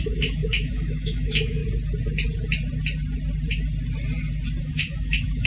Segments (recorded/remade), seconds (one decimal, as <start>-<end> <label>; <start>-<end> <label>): 0.0-1.6 remade; 1.6-4.6 recorded; 4.6-5.5 remade